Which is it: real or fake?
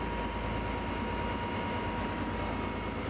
real